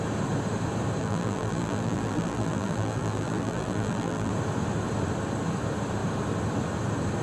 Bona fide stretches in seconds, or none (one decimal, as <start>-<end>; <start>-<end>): 0.0-1.0; 4.3-7.2